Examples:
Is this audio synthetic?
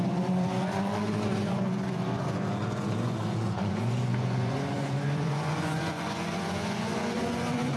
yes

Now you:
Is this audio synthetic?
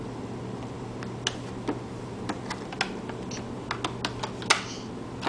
no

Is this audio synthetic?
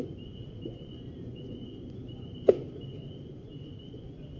yes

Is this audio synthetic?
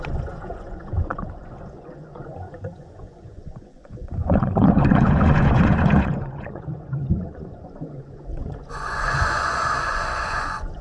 yes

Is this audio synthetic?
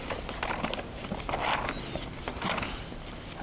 no